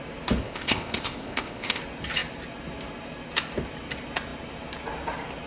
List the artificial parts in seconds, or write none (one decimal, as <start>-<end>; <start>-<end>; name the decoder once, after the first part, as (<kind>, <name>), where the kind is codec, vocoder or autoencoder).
0.4-1.8 (codec, ZipCodec)